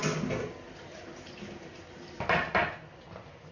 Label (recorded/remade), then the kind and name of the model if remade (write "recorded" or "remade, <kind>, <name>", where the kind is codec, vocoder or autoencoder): recorded